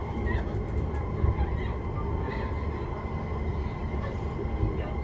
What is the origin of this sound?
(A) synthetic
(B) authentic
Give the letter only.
B